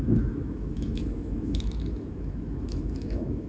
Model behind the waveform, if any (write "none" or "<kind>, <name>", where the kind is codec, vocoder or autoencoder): autoencoder, DAC-VAE